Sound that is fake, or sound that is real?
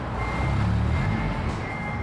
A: real